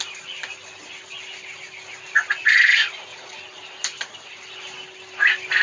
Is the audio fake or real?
real